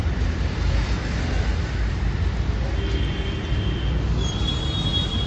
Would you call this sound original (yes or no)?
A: yes